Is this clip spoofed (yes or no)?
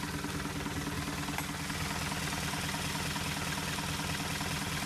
no